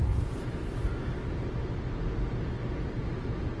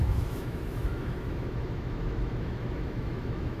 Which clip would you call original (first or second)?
first